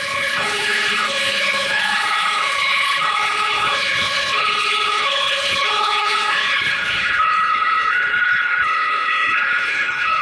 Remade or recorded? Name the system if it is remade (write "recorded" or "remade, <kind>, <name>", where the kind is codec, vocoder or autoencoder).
remade, codec, HILCodec